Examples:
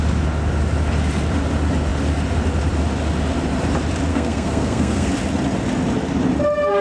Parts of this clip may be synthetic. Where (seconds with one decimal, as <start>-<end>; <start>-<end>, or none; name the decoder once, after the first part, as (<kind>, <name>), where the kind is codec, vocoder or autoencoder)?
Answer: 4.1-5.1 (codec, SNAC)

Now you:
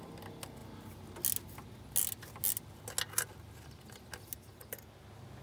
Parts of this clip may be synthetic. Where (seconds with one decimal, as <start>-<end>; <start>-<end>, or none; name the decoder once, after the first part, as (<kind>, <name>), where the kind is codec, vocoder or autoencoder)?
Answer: none

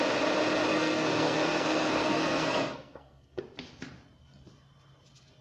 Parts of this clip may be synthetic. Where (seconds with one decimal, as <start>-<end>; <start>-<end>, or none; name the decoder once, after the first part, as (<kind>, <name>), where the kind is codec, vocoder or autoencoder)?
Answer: 0.7-3.4 (codec, SNAC)

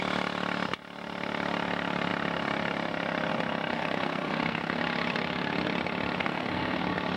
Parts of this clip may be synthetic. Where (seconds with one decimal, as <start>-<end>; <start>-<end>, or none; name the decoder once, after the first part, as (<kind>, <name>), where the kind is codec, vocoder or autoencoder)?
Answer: 3.7-4.8 (codec, SNAC); 6.2-6.8

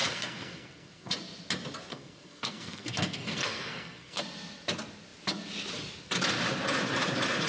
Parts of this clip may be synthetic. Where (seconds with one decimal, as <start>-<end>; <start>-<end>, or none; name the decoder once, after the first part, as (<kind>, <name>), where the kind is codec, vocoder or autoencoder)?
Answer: 0.0-1.1 (codec, SNAC); 1.9-4.2